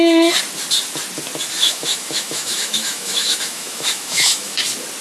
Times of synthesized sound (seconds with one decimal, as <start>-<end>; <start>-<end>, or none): 1.6-4.6